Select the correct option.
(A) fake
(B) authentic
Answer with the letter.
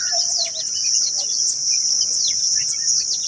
B